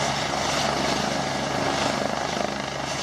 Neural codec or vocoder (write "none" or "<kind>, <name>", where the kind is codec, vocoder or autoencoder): none